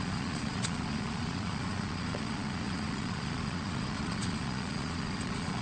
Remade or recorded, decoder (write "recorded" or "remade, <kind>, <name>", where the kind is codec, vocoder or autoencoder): remade, vocoder, Vocos